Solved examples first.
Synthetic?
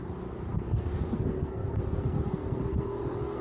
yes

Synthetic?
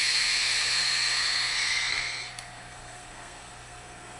yes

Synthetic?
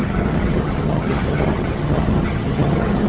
yes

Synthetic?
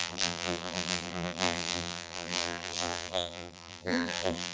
yes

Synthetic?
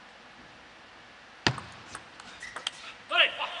no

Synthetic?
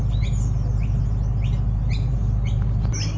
no